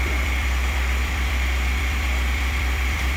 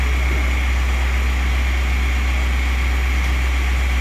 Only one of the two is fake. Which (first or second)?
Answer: first